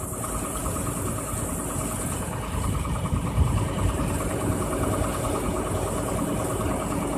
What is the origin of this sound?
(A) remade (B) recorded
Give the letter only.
B